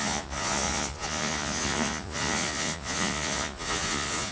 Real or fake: fake